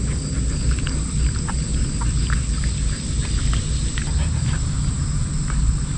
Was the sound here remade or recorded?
recorded